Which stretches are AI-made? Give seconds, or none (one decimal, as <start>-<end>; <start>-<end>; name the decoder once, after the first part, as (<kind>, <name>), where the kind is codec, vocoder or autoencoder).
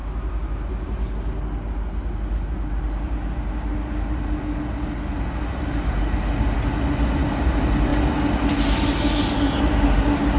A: none